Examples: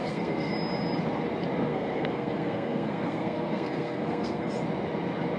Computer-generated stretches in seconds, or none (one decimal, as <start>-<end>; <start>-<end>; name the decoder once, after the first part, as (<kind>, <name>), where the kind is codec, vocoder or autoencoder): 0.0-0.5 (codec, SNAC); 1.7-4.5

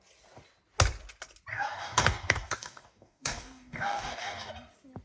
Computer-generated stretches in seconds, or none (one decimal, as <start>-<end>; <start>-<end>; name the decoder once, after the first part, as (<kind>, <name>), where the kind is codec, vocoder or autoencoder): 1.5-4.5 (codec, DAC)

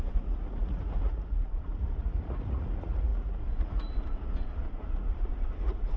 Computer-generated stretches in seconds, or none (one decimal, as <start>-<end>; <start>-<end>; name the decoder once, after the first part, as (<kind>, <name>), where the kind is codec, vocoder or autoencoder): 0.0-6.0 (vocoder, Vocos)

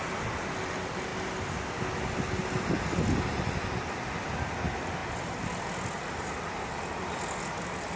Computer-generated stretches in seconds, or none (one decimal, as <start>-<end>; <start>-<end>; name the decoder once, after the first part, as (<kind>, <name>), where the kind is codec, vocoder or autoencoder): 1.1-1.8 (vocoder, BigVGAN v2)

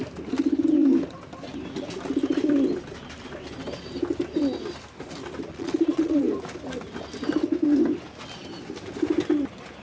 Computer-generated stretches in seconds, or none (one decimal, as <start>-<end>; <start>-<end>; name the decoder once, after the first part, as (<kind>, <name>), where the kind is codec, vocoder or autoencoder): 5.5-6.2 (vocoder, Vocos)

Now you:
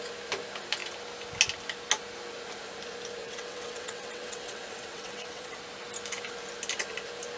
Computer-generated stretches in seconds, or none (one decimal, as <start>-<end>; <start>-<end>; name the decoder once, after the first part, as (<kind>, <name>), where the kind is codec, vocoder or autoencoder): 3.2-5.6 (vocoder, WaveNeXt)